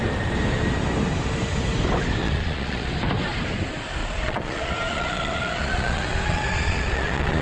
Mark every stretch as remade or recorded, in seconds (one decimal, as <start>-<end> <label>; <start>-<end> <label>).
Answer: 0.0-2.2 recorded; 2.2-2.9 remade; 2.9-4.0 recorded; 4.0-7.4 remade